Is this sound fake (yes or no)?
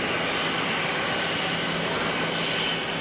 no